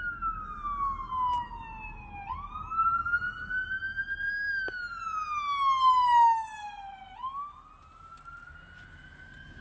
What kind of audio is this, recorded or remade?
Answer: recorded